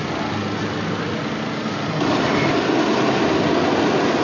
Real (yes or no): yes